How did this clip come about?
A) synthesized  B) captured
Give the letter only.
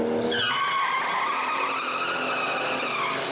B